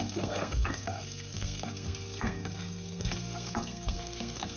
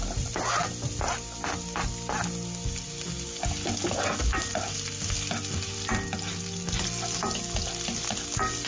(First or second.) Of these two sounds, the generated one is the first